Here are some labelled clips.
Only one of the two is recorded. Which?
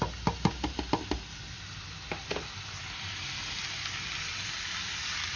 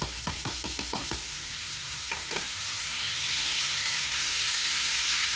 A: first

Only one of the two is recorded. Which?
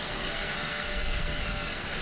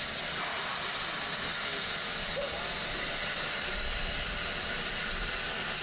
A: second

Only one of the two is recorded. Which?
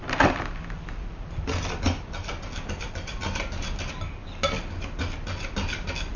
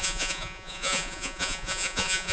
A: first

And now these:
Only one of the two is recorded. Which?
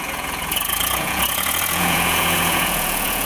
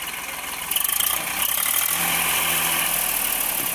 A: second